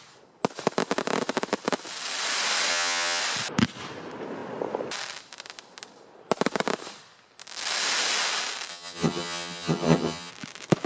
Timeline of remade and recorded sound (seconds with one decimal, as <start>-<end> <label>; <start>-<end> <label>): 0.0-2.7 recorded; 2.7-3.2 remade; 3.2-8.7 recorded; 8.7-10.3 remade; 10.3-10.9 recorded